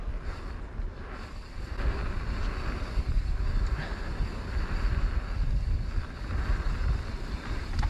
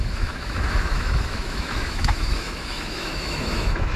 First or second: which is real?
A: first